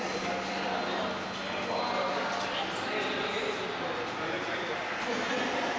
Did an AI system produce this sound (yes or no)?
no